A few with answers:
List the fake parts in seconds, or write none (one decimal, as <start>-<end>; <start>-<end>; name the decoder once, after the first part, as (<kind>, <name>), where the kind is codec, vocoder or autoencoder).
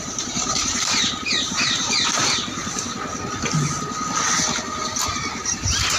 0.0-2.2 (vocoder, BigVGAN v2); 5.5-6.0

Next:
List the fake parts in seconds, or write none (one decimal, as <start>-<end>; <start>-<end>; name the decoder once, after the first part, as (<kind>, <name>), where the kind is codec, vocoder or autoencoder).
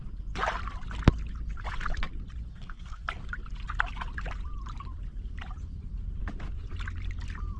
2.5-3.1 (codec, SNAC)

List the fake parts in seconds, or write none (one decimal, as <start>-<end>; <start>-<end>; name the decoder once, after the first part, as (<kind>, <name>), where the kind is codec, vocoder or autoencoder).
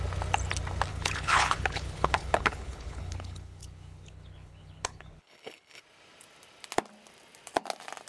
0.9-5.8 (codec, HILCodec)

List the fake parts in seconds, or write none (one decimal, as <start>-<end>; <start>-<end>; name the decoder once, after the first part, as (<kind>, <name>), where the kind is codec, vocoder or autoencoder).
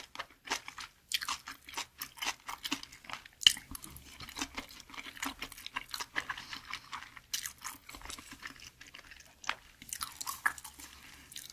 none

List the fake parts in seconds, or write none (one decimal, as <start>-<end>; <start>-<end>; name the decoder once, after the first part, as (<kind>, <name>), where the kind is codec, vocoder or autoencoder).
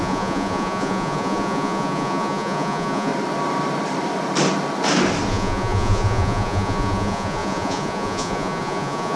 0.0-3.1 (vocoder, Vocos); 5.3-9.2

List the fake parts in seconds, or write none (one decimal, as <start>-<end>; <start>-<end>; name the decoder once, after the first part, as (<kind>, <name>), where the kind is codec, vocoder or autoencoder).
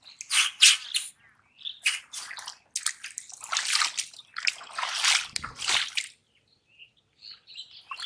none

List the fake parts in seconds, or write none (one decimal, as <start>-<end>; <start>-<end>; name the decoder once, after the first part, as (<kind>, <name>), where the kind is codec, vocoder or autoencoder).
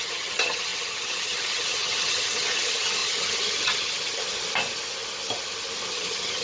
0.0-4.2 (vocoder, HiFi-GAN); 5.9-6.4